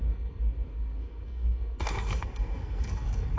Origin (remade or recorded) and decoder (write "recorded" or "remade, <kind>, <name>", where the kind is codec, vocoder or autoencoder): remade, codec, SNAC